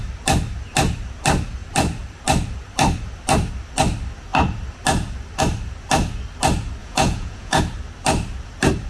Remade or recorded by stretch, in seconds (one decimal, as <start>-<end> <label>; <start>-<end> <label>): 0.0-6.8 recorded; 6.8-7.6 remade; 7.6-8.9 recorded